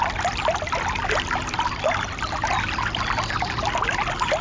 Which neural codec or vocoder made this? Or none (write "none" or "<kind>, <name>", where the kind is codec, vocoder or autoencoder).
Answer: none